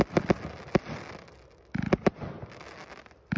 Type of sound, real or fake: real